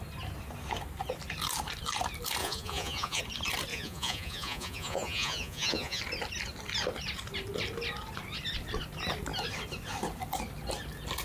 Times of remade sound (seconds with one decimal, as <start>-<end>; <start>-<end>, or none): 2.4-3.2; 3.7-6.0